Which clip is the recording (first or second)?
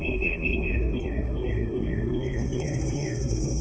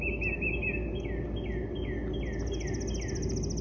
second